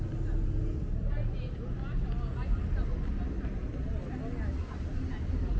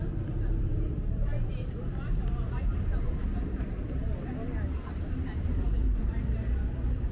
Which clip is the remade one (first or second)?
second